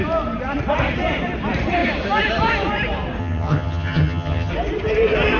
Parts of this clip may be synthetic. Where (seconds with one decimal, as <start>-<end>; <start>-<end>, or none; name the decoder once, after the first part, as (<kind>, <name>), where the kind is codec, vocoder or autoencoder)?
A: 3.2-4.5 (vocoder, HiFi-GAN)